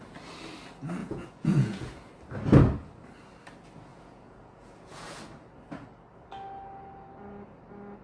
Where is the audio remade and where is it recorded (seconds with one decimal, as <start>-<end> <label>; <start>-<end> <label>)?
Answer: 0.0-1.0 recorded; 1.0-2.1 remade; 2.1-3.9 recorded; 3.9-5.2 remade; 5.2-8.0 recorded